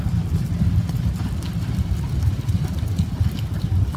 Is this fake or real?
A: real